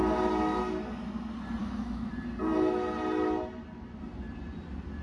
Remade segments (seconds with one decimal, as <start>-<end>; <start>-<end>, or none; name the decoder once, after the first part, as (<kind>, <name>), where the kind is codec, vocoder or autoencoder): 1.6-2.1 (autoencoder, DAC-VAE)